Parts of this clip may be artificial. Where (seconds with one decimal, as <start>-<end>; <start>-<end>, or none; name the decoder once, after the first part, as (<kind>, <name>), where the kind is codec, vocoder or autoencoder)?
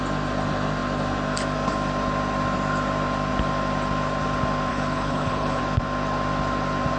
4.7-5.6 (codec, HILCodec)